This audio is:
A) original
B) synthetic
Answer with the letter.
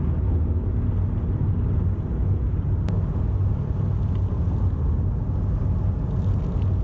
A